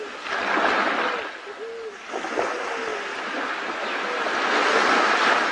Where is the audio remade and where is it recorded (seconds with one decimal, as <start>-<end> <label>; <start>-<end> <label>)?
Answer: 0.0-5.5 recorded